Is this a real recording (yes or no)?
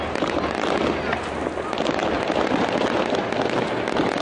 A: yes